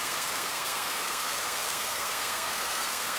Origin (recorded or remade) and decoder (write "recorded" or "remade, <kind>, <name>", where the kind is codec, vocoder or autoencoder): remade, codec, SNAC